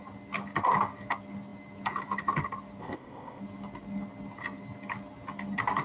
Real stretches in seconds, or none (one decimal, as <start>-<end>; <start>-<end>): 0.0-2.8; 3.4-5.8